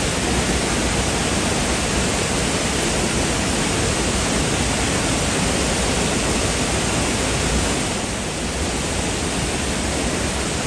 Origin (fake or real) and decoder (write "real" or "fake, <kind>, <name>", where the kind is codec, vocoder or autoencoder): real